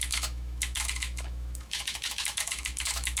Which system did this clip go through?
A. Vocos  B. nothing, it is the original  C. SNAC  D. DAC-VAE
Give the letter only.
D